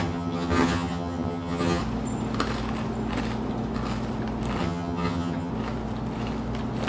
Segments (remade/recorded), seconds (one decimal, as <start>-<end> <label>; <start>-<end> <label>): 0.0-1.8 remade; 1.8-4.6 recorded; 4.6-5.5 remade; 5.5-6.9 recorded